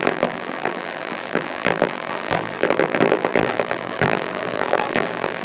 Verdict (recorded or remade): remade